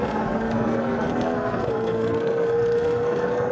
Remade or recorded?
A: remade